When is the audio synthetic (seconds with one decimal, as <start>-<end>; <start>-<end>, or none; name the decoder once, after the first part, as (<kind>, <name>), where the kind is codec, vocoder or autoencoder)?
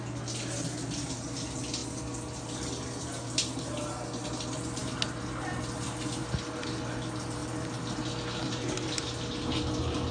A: none